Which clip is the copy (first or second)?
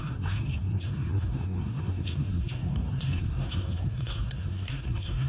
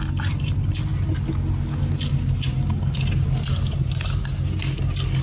first